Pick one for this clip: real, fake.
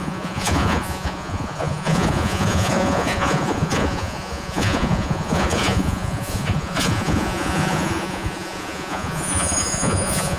fake